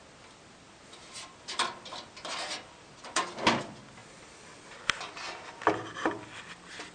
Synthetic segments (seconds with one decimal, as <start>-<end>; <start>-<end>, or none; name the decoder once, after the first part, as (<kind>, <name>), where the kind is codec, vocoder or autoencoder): none